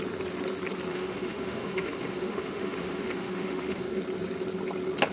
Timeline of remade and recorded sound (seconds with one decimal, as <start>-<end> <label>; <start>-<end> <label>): 0.0-0.9 recorded; 0.9-4.0 remade; 4.0-5.1 recorded